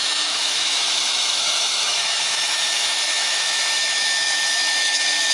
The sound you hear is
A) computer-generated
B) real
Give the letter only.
A